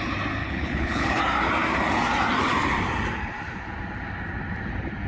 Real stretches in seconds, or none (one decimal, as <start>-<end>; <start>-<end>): 0.0-0.4; 1.2-5.1